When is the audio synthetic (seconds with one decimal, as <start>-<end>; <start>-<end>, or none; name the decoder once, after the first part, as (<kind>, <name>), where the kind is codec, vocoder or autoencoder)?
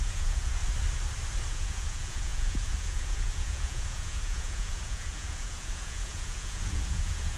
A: 0.0-0.6 (vocoder, Vocos); 1.5-7.4